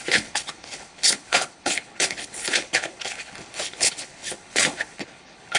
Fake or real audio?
fake